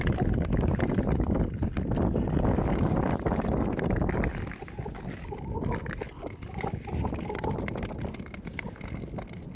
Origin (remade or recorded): recorded